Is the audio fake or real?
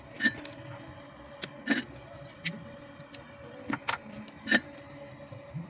real